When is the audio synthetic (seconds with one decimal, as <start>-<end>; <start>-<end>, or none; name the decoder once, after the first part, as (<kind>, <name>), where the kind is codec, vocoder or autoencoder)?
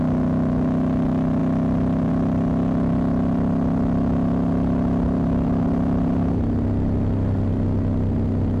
none